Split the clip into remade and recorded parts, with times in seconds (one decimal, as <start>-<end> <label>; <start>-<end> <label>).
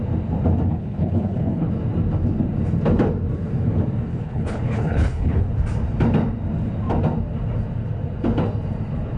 0.0-0.7 recorded; 0.7-1.7 remade; 1.7-4.1 recorded; 4.1-5.4 remade; 5.4-9.2 recorded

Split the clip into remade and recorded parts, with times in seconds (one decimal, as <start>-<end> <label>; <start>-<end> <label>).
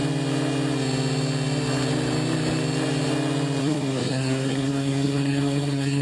0.0-3.6 recorded; 3.6-6.0 remade